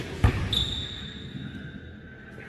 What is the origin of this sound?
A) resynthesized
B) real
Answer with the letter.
B